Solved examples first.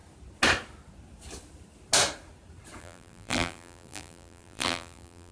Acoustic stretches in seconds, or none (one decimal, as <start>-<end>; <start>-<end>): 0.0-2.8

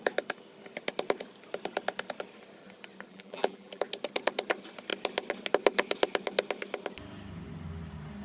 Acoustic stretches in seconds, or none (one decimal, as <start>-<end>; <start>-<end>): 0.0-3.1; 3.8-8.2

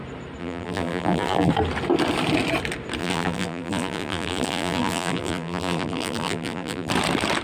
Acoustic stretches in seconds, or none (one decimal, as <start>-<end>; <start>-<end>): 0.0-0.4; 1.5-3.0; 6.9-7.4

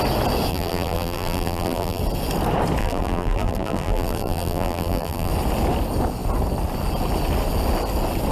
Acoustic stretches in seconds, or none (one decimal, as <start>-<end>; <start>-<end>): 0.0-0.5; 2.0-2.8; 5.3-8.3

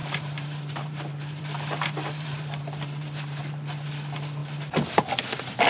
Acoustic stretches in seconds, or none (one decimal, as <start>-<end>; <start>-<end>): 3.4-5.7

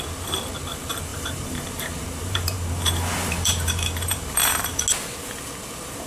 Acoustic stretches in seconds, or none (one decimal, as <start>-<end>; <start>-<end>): 0.0-1.1; 4.8-6.1

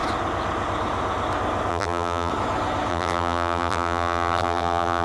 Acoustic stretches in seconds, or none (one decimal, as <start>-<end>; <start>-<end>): 0.0-1.7; 2.3-2.9